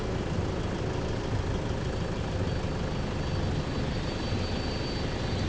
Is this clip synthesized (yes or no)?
no